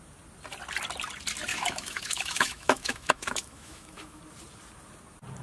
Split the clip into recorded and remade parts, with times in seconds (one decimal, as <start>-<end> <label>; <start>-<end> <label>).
0.0-1.5 recorded; 1.5-4.2 remade; 4.2-5.4 recorded